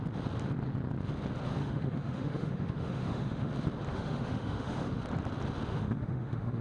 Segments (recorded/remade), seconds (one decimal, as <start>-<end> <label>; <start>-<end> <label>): 0.0-1.6 recorded; 1.6-3.5 remade; 3.5-3.9 recorded; 3.9-5.0 remade; 5.0-5.7 recorded; 5.7-6.6 remade

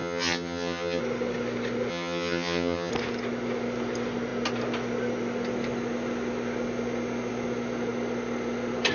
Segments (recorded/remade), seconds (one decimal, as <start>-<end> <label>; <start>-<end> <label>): 0.0-1.0 remade; 1.0-1.9 recorded; 1.9-2.9 remade; 2.9-8.9 recorded

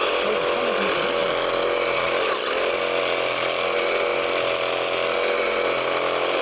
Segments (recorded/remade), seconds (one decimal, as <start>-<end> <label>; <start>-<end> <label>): 0.0-6.4 recorded